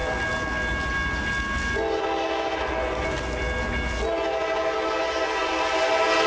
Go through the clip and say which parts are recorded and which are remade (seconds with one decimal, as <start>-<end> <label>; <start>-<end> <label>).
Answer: 0.0-6.3 recorded